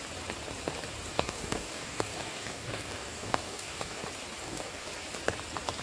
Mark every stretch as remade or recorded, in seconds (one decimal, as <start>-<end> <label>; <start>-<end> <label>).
0.0-1.1 recorded; 1.1-4.0 remade; 4.0-4.4 recorded; 4.4-4.9 remade; 4.9-5.8 recorded